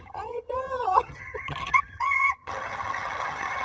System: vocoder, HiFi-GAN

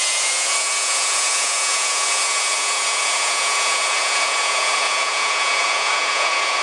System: vocoder, Vocos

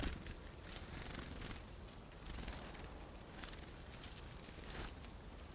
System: none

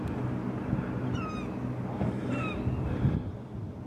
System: none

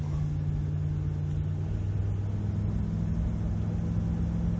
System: none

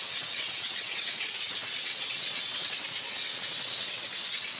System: vocoder, WaveNeXt